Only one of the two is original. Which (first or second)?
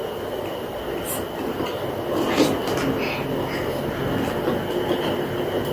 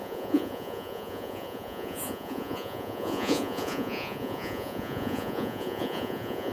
first